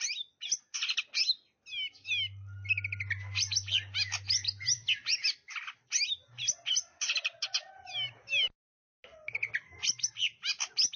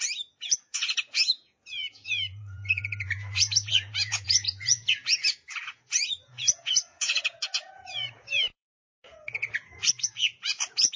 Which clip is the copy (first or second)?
second